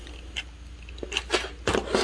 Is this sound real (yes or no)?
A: yes